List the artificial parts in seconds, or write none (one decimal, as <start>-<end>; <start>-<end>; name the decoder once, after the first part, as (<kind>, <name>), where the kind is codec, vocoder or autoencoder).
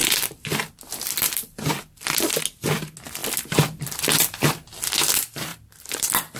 0.0-2.4 (vocoder, BigVGAN v2); 5.5-6.4